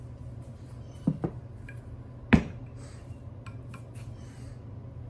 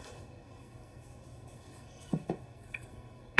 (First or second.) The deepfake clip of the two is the second